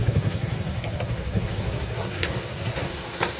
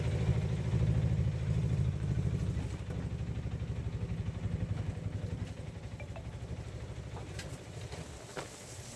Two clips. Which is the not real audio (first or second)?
first